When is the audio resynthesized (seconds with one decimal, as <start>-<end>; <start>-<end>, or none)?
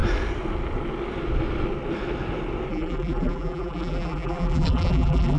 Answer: 2.7-5.4